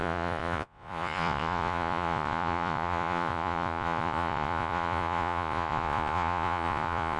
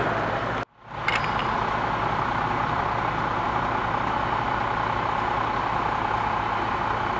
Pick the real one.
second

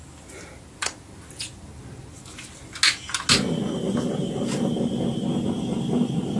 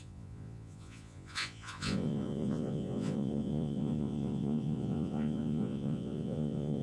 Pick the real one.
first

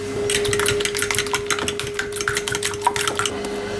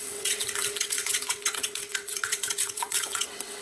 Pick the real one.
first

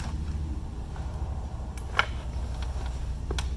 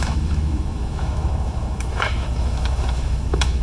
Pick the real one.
first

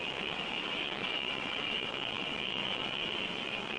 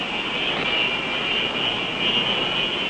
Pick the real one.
second